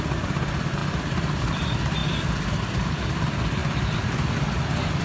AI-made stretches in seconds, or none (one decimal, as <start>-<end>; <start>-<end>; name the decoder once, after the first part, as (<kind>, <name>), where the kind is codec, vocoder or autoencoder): 0.0-3.6 (vocoder, BigVGAN v2); 4.4-5.0

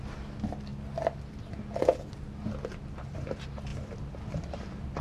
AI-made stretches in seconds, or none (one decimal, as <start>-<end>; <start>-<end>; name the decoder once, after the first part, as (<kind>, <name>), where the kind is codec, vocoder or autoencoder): 3.7-5.0 (vocoder, BigVGAN v2)

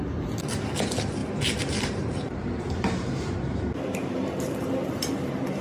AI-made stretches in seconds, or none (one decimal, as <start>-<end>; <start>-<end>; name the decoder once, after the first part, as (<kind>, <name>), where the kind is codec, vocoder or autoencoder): 1.2-4.6 (vocoder, BigVGAN v2)